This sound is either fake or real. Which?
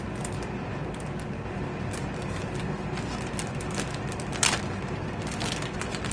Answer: real